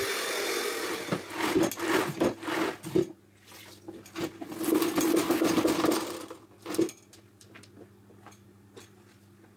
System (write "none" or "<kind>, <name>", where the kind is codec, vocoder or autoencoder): none